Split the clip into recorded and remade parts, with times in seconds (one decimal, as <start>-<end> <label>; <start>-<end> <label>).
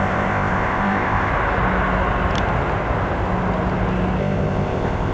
0.0-1.3 remade; 1.3-4.2 recorded; 4.2-5.1 remade